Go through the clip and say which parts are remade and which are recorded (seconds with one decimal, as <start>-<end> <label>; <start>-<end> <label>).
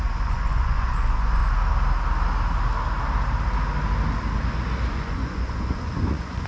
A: 0.0-1.4 remade; 1.4-4.9 recorded; 4.9-6.5 remade